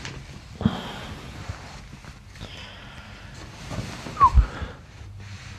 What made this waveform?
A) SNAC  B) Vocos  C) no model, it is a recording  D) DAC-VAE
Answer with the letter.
C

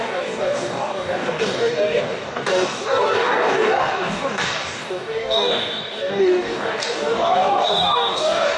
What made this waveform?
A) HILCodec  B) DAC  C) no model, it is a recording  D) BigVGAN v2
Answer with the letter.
B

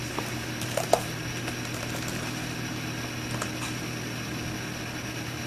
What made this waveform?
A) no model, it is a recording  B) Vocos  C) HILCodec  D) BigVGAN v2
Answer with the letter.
A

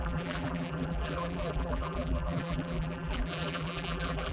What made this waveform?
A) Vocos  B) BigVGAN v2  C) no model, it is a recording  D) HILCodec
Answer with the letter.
B